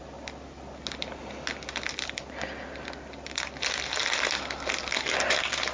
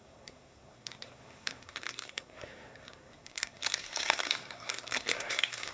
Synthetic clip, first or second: second